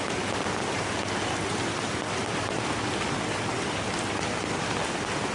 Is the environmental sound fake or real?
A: real